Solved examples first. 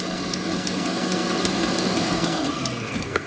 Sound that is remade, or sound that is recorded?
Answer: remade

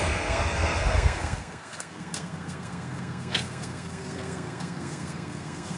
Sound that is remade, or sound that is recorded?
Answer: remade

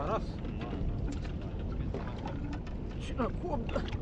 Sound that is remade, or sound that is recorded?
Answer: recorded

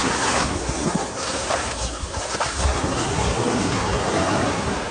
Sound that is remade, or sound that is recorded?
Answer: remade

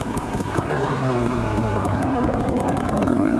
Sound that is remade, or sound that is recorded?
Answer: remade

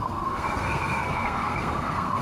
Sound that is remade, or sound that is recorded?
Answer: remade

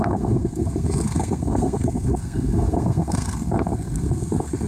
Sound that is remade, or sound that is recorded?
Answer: remade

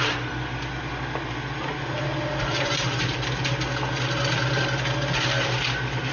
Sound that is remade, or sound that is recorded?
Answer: recorded